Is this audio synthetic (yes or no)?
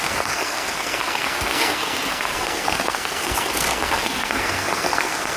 yes